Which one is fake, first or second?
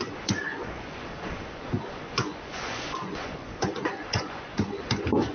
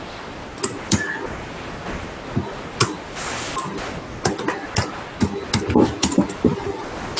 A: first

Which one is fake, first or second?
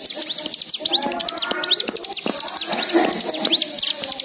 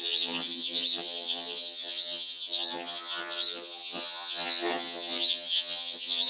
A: second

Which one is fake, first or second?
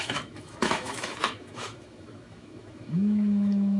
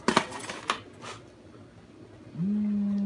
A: first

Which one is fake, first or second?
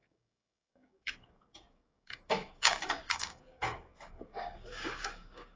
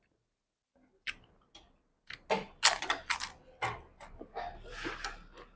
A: first